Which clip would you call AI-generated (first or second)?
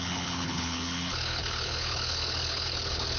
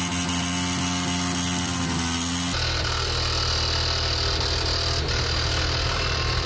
first